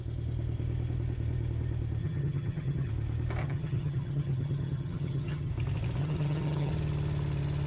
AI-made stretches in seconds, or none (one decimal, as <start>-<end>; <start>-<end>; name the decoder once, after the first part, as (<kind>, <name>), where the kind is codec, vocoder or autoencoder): 2.0-2.9 (vocoder, HiFi-GAN); 3.4-5.5; 6.0-6.7